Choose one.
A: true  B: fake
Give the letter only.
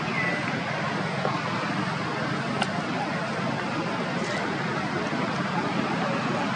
A